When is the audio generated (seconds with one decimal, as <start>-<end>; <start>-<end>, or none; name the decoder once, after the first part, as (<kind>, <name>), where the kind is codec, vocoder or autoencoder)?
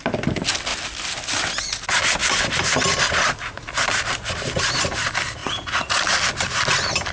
5.4-6.0 (vocoder, Vocos)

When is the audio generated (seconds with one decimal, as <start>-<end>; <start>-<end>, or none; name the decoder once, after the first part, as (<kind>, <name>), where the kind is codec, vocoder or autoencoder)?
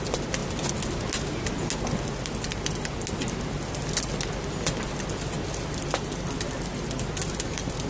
none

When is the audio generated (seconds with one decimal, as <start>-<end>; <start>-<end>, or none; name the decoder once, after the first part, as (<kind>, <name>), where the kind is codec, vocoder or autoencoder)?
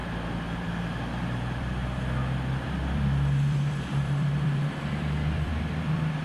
0.0-6.2 (vocoder, BigVGAN v2)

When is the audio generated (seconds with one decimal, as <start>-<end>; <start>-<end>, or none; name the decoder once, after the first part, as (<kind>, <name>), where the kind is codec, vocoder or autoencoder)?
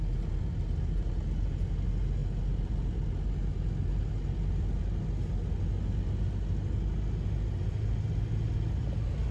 none